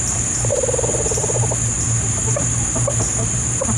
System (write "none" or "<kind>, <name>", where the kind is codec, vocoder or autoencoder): vocoder, BigVGAN v2